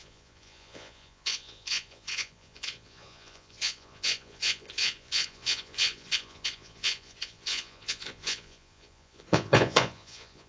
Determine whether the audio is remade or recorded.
remade